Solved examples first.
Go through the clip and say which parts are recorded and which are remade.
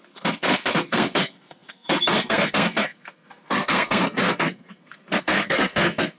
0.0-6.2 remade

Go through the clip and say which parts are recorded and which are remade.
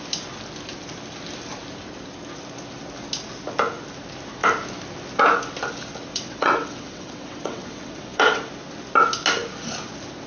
0.0-6.1 recorded; 6.1-8.5 remade; 8.5-10.3 recorded